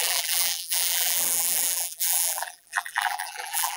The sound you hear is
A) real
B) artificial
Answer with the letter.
B